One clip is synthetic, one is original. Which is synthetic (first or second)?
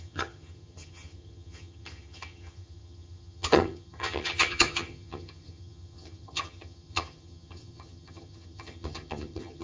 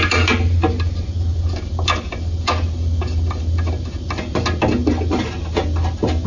first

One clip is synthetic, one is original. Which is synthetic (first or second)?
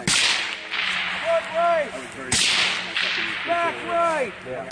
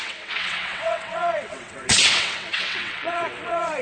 second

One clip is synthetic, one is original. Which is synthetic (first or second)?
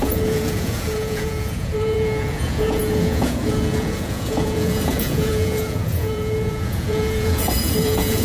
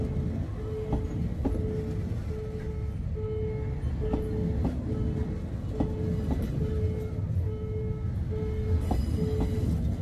first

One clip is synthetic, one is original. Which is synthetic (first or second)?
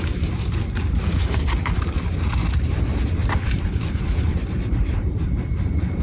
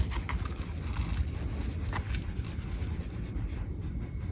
first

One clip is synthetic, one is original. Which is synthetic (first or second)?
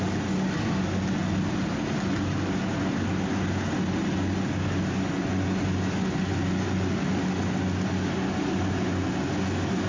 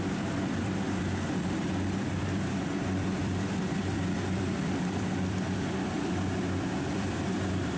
second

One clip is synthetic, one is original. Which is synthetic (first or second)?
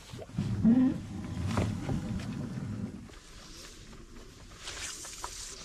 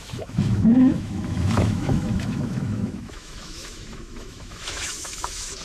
second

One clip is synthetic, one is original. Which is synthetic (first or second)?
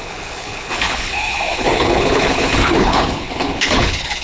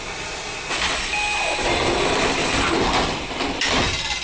first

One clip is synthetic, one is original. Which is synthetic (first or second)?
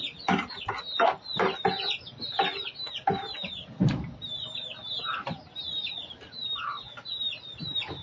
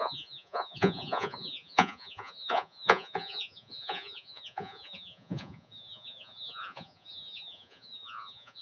second